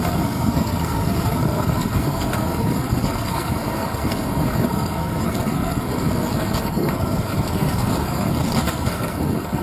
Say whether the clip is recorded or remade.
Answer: remade